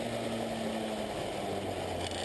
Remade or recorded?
recorded